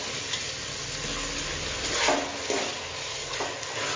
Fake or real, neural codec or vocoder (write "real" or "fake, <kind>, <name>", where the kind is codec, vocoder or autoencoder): real